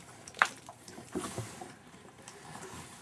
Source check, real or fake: fake